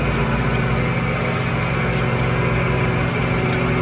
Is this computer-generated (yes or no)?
no